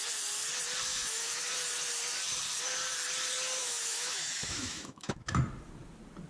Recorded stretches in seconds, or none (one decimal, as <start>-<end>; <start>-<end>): 0.0-0.9; 1.5-3.6; 5.4-6.3